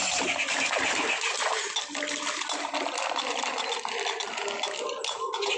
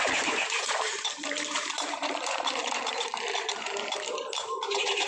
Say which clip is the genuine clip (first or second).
first